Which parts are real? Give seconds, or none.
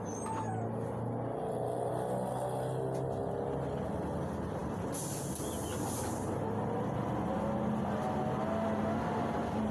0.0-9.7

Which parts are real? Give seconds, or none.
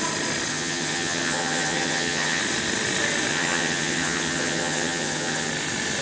0.0-0.5; 2.4-3.3; 5.5-6.0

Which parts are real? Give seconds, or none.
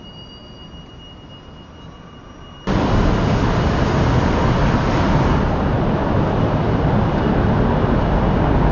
0.0-8.7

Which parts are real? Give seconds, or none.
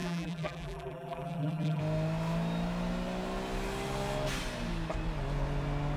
1.8-6.0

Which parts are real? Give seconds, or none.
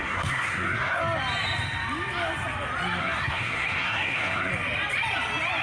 1.0-3.0; 4.5-5.6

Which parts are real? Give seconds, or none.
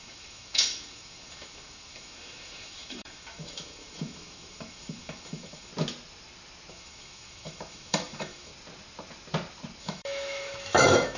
5.7-6.7; 8.5-9.8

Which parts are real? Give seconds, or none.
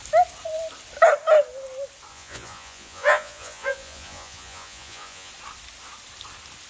0.0-2.1; 5.3-6.7